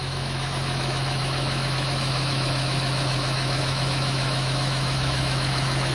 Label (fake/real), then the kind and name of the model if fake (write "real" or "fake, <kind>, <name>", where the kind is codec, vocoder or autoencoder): fake, autoencoder, DAC-VAE